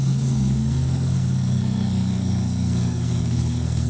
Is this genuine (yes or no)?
no